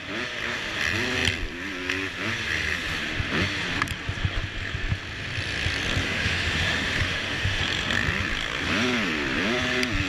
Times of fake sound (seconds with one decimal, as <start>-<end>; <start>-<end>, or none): 6.0-7.6